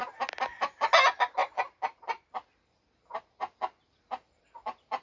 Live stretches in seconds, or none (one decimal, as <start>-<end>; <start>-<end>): 0.0-5.0